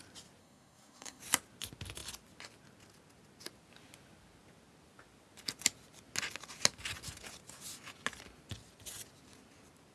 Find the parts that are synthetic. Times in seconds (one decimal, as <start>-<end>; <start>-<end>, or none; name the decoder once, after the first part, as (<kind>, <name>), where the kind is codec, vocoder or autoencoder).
0.4-1.2 (codec, SNAC)